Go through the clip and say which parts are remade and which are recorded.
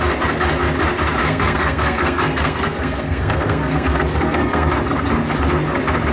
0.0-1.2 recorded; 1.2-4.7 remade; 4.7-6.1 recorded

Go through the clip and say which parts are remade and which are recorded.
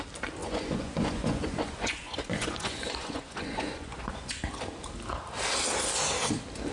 0.0-0.4 recorded; 0.4-4.4 remade; 4.4-6.7 recorded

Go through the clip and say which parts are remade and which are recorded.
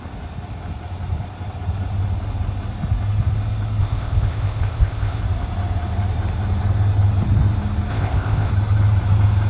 0.0-3.8 recorded; 3.8-5.2 remade; 5.2-7.9 recorded; 7.9-8.5 remade; 8.5-9.5 recorded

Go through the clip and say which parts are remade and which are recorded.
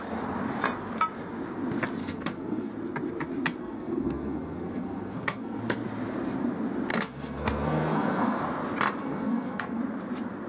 0.0-2.0 recorded; 2.0-2.7 remade; 2.7-3.6 recorded; 3.6-5.6 remade; 5.6-6.9 recorded; 6.9-8.4 remade; 8.4-9.0 recorded; 9.0-9.8 remade; 9.8-10.5 recorded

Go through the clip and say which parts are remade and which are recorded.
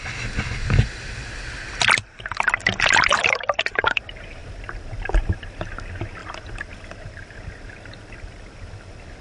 0.0-3.1 recorded; 3.1-4.0 remade; 4.0-9.2 recorded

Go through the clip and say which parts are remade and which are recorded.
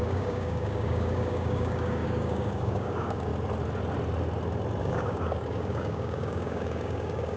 0.0-3.3 remade; 3.3-4.8 recorded; 4.8-7.4 remade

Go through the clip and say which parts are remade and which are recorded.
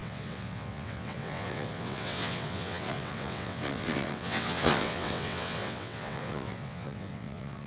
0.0-7.7 remade